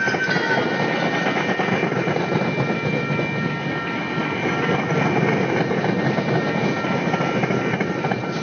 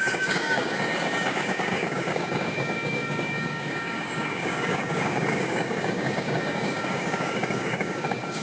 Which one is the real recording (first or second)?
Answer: first